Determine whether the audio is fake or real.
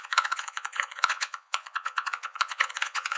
fake